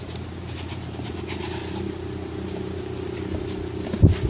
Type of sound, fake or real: fake